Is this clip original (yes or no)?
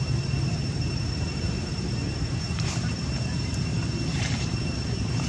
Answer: no